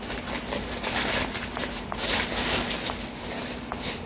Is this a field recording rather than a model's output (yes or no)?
yes